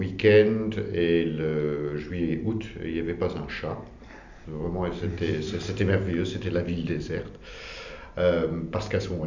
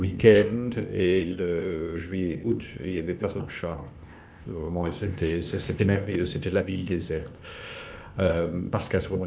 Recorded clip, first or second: first